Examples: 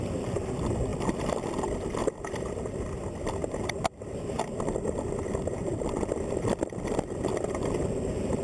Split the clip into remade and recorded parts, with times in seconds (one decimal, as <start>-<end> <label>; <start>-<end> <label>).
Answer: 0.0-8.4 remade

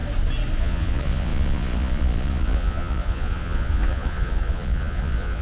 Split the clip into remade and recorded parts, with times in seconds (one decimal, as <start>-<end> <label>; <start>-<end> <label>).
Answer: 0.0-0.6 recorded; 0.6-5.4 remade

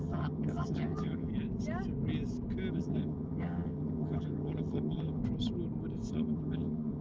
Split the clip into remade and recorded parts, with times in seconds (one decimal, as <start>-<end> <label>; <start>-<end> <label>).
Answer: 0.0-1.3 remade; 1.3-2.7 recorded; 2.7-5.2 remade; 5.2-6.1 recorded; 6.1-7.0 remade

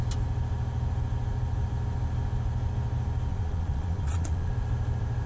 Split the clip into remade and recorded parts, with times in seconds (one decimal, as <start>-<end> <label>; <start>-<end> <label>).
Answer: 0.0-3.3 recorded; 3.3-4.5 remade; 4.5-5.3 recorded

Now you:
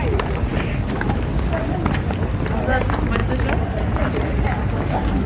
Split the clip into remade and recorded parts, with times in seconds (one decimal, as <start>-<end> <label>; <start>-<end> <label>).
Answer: 0.0-0.5 recorded; 0.5-1.8 remade; 1.8-5.3 recorded

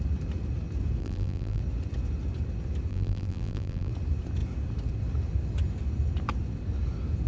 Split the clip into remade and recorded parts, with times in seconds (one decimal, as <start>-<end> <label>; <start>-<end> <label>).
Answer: 0.0-1.0 recorded; 1.0-1.6 remade; 1.6-2.9 recorded; 2.9-3.9 remade; 3.9-7.3 recorded

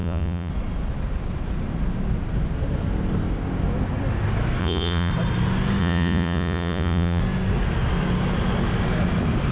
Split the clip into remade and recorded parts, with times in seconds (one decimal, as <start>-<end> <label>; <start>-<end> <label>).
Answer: 0.0-0.5 remade; 0.5-4.6 recorded; 4.6-5.1 remade; 5.1-5.8 recorded; 5.8-7.2 remade; 7.2-9.5 recorded